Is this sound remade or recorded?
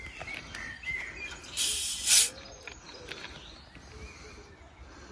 recorded